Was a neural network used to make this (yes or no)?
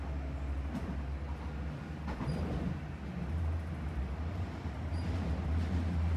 no